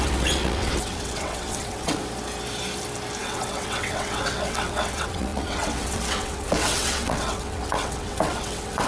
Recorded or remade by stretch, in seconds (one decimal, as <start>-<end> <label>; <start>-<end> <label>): 0.0-2.0 remade; 2.0-3.2 recorded; 3.2-8.9 remade